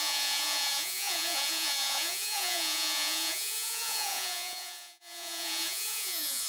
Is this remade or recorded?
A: remade